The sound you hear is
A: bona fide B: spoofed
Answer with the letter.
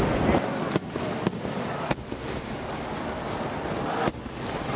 A